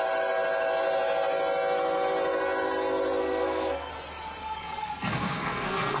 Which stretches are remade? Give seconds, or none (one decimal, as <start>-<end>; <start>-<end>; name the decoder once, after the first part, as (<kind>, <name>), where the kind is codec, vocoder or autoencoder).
3.2-3.9 (codec, SNAC); 4.4-6.0